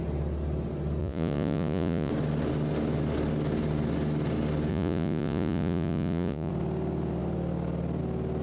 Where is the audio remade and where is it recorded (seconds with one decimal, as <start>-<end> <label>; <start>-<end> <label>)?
0.0-1.0 recorded; 1.0-2.1 remade; 2.1-4.7 recorded; 4.7-6.5 remade; 6.5-8.4 recorded